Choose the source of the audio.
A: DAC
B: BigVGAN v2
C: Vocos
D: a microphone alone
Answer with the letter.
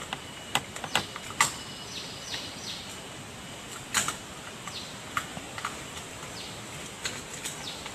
D